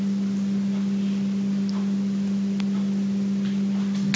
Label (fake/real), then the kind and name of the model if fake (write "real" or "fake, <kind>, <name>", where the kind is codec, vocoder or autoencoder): real